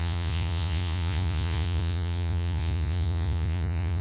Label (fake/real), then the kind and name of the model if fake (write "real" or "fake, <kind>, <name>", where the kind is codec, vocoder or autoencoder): fake, vocoder, Vocos